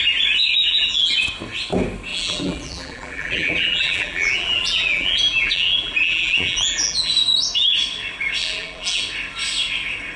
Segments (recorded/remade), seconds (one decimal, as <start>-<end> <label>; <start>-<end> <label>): 0.0-0.6 recorded; 0.6-1.1 remade; 1.1-2.1 recorded; 2.1-7.1 remade; 7.1-8.4 recorded; 8.4-9.0 remade; 9.0-10.2 recorded